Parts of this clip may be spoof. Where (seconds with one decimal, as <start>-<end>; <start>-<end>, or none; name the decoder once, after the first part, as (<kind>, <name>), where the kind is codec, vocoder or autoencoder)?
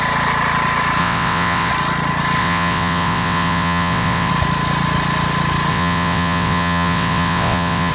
1.0-1.7 (vocoder, WaveNeXt); 2.4-4.3; 5.7-7.9